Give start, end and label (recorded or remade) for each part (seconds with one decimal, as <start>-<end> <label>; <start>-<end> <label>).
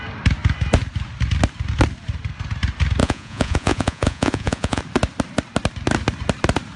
0.0-3.0 recorded; 3.0-4.8 remade; 4.8-6.8 recorded